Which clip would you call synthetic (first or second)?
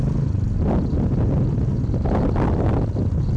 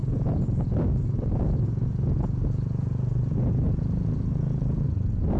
second